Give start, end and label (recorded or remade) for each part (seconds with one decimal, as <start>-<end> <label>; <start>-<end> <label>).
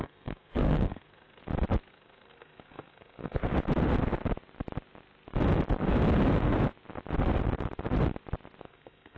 0.0-1.4 remade; 1.4-1.9 recorded; 1.9-3.5 remade; 3.5-8.6 recorded; 8.6-9.2 remade